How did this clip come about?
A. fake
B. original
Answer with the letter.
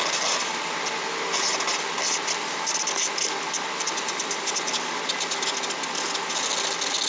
B